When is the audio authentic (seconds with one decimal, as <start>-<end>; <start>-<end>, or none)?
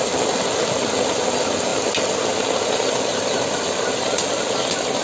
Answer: 0.0-5.0